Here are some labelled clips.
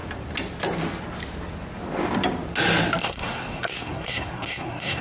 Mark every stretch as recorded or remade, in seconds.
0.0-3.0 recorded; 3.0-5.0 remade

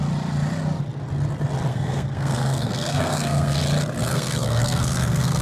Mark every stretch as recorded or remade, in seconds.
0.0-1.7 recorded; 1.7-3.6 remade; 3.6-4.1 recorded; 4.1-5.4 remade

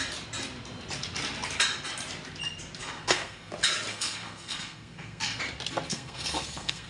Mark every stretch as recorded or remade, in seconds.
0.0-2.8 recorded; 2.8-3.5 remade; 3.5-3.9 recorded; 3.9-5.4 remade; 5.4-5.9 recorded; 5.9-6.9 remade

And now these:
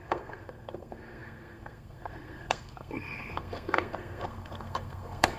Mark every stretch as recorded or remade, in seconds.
0.0-5.4 remade

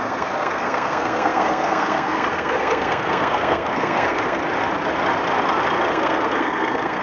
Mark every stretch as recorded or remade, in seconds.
0.0-4.4 remade; 4.4-5.9 recorded; 5.9-7.0 remade